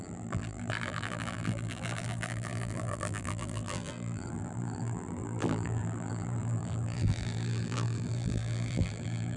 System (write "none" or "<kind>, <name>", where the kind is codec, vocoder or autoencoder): vocoder, BigVGAN v2